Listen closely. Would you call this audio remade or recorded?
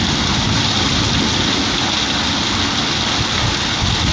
recorded